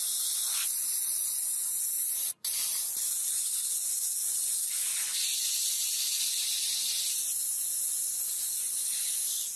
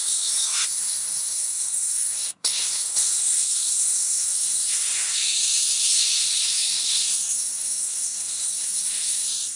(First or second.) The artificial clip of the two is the second